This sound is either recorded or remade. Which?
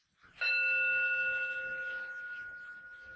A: recorded